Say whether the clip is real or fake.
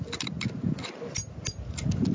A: real